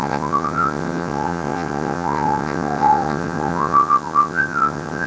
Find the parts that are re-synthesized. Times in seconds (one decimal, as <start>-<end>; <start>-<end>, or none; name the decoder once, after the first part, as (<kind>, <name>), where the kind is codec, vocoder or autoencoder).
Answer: 0.0-5.1 (vocoder, WaveNeXt)